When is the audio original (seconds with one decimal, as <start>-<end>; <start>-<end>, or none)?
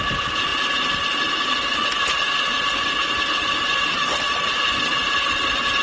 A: 0.0-3.0; 4.3-5.8